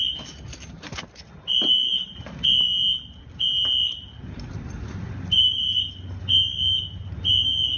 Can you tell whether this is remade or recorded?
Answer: recorded